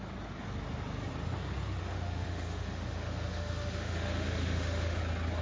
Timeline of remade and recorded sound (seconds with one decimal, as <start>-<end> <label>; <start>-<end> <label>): 0.0-1.8 recorded; 1.8-5.0 remade; 5.0-5.4 recorded